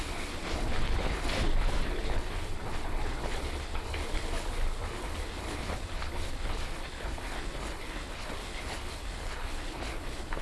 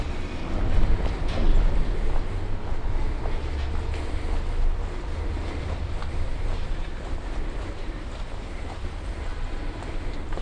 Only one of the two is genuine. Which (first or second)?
second